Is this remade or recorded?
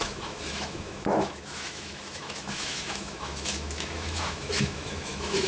remade